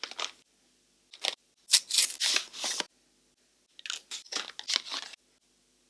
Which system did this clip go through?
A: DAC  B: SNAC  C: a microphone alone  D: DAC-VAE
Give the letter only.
C